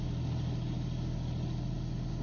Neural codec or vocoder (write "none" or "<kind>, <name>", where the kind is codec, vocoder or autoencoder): none